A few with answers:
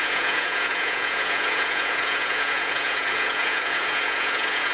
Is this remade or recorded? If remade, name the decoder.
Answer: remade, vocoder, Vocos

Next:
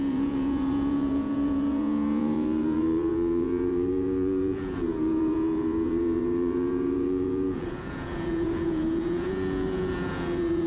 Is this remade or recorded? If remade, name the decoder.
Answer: remade, vocoder, Vocos